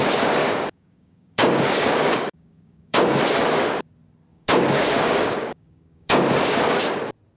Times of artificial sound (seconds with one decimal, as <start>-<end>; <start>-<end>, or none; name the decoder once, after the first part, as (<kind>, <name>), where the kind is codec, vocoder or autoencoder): 0.4-3.2 (codec, DAC); 4.3-6.8